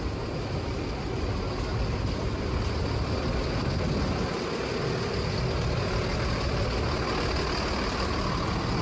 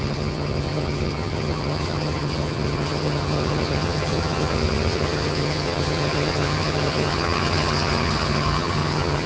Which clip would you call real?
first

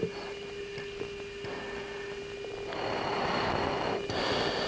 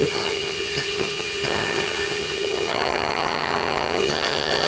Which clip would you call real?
first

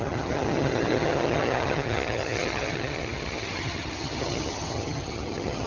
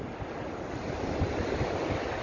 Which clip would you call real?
second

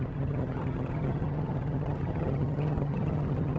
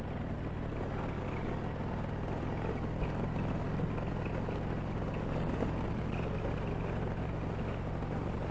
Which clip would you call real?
second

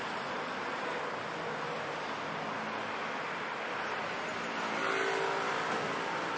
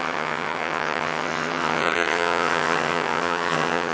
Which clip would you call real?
first